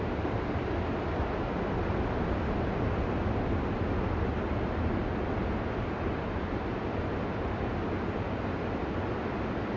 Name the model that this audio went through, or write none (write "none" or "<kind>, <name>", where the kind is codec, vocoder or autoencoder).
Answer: none